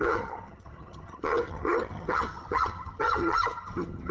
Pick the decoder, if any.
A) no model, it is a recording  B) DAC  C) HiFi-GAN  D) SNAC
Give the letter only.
C